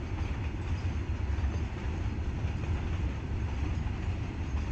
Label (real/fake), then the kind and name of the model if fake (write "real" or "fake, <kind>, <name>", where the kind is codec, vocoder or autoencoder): real